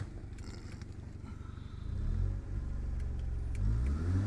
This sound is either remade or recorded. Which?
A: recorded